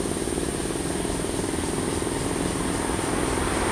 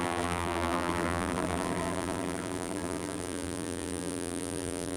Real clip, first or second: first